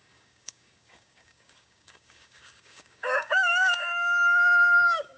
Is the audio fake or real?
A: fake